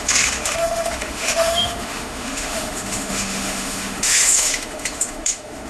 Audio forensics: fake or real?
fake